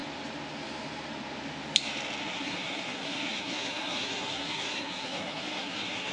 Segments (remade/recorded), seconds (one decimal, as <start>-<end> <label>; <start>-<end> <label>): 0.0-2.2 recorded; 2.2-6.1 remade